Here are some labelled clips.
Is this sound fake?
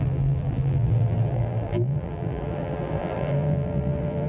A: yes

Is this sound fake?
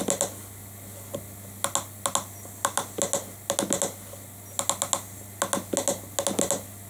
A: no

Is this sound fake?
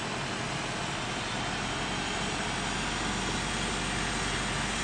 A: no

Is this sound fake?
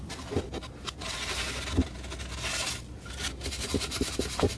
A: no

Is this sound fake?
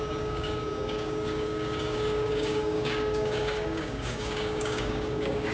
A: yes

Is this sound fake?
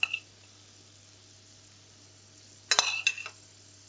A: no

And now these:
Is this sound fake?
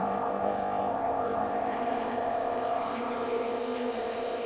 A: yes